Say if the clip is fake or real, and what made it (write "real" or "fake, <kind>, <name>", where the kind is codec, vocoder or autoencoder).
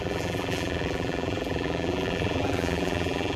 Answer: fake, vocoder, BigVGAN v2